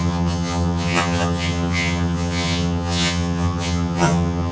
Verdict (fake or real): fake